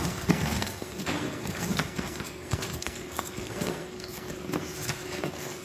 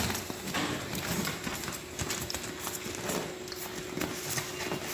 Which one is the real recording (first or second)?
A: second